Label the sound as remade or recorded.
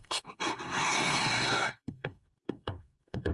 remade